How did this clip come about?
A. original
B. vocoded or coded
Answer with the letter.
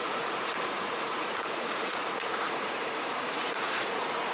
B